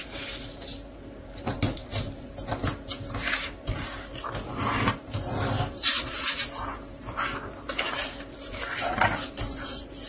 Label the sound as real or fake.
fake